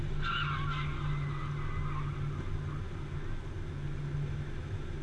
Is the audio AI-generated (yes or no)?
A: no